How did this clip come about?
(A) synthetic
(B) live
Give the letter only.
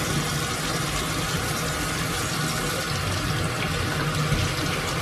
B